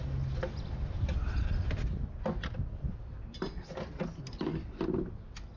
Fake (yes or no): no